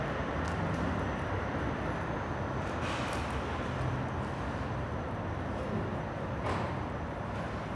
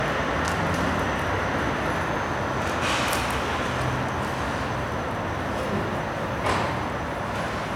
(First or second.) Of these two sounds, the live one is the second